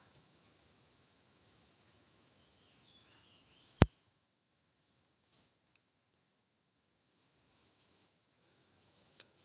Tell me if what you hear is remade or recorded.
remade